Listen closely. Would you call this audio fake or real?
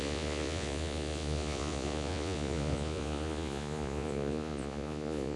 fake